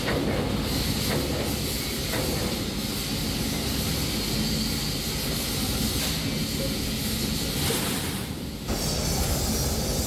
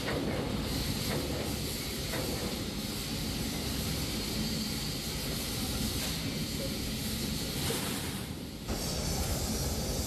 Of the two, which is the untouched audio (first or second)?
first